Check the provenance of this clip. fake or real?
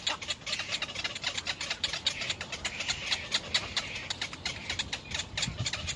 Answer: real